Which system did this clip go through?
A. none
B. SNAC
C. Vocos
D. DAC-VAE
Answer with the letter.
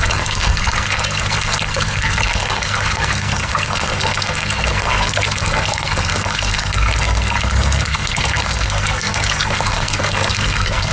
B